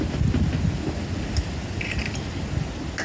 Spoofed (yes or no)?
no